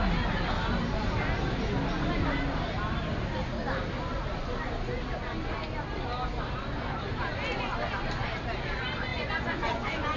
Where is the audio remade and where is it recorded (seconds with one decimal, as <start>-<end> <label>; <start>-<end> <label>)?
0.0-9.1 recorded; 9.1-10.2 remade